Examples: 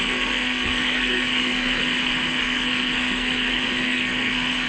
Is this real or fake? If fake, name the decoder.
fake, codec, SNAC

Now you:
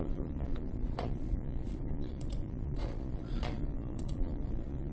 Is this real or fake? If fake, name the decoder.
fake, vocoder, Vocos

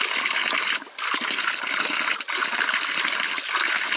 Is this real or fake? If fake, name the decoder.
real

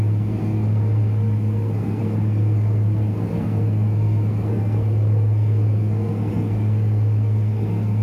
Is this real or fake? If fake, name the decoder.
fake, codec, SNAC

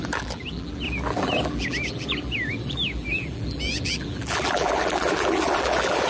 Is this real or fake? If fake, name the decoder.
fake, vocoder, BigVGAN v2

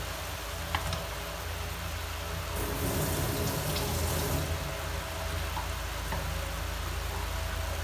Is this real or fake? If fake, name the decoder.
real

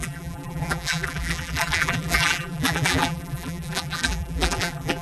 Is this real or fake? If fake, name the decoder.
fake, vocoder, BigVGAN v2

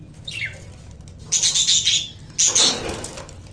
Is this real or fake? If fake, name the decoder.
real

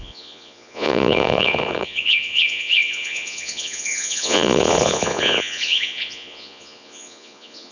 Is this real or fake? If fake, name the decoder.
fake, vocoder, Vocos